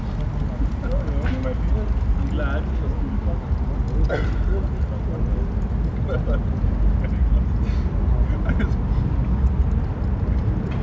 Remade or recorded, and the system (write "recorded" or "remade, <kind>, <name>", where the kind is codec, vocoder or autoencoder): recorded